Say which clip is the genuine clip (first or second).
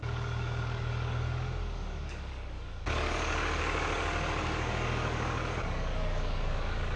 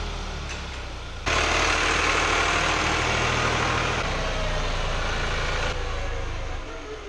second